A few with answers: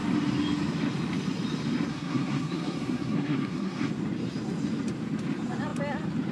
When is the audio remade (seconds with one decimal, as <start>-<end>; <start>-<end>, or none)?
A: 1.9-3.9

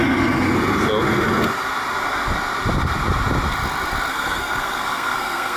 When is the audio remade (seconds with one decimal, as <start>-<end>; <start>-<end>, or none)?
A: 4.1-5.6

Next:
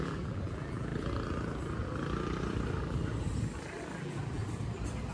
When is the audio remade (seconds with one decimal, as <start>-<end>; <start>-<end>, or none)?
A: 0.0-0.9; 4.0-4.4

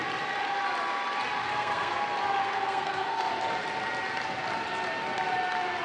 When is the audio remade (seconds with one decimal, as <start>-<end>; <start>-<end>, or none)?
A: 1.4-2.0; 2.4-3.3

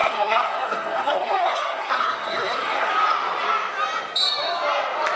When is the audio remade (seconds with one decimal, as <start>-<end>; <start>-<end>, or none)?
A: 0.0-2.9

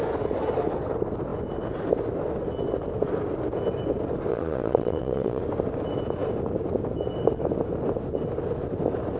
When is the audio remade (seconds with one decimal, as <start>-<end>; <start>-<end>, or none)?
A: 4.3-5.4

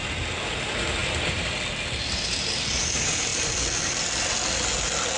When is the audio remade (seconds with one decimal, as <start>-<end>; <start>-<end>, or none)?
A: 1.0-1.7; 3.3-4.3

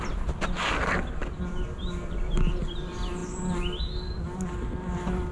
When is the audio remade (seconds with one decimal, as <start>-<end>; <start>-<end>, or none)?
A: none